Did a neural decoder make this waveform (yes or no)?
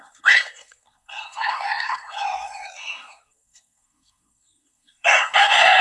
yes